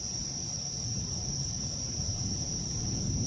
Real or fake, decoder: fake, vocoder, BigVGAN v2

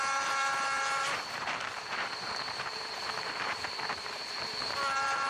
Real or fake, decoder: fake, vocoder, BigVGAN v2